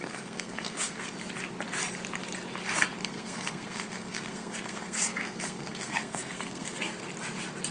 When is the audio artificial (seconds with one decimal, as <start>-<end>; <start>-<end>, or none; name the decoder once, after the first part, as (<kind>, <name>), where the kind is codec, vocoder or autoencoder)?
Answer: 0.0-1.1 (codec, SNAC); 3.0-7.0